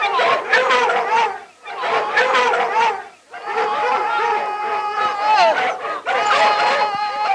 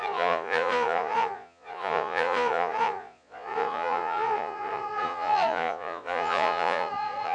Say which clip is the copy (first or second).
second